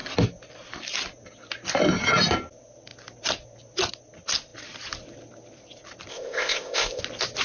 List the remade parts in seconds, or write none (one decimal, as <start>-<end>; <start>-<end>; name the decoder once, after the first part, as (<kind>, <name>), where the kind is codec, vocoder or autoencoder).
6.1-7.0 (codec, ZipCodec)